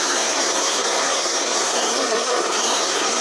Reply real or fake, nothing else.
fake